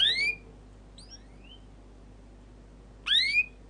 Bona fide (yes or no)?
yes